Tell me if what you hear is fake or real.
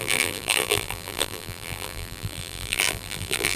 fake